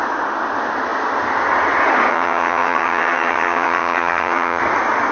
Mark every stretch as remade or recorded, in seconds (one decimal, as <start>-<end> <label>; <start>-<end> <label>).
0.0-2.1 recorded; 2.1-4.6 remade; 4.6-5.1 recorded